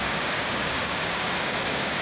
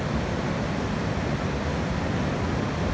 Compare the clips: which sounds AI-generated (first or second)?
first